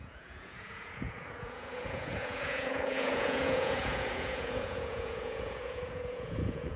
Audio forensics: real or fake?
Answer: fake